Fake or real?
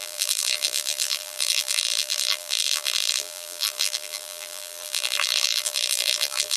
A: fake